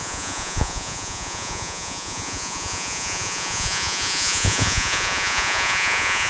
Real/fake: fake